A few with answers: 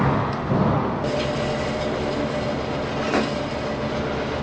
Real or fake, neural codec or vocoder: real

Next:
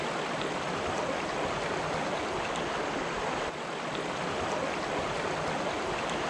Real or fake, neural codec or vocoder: real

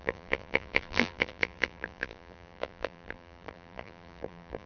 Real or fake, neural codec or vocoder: fake, vocoder, BigVGAN v2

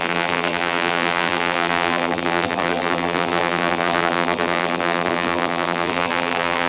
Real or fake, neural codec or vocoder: fake, vocoder, BigVGAN v2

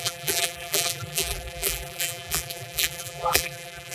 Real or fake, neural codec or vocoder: fake, vocoder, BigVGAN v2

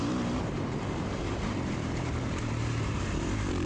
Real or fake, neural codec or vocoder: fake, vocoder, BigVGAN v2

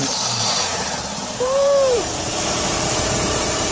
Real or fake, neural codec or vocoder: fake, vocoder, BigVGAN v2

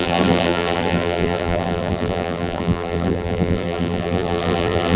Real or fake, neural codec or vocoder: fake, vocoder, BigVGAN v2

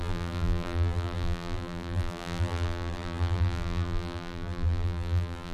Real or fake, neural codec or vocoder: fake, vocoder, BigVGAN v2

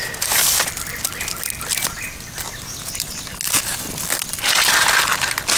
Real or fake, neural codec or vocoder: real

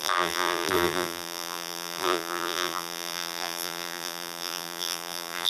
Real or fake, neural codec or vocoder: fake, vocoder, BigVGAN v2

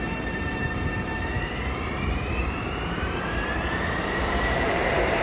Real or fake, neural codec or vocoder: fake, vocoder, BigVGAN v2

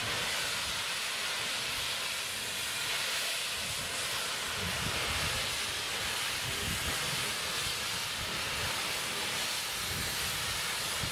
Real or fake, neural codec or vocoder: real